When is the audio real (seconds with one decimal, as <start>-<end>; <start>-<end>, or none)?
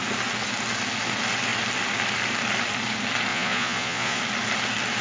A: 0.0-3.3; 4.2-5.0